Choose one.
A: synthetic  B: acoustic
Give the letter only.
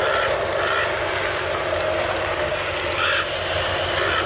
B